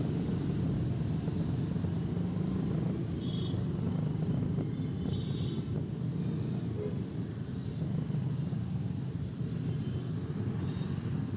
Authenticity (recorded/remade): recorded